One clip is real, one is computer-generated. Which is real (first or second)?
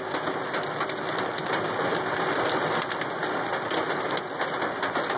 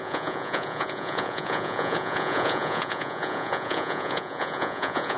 first